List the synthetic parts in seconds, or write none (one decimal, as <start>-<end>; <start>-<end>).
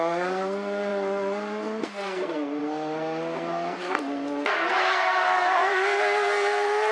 0.0-6.9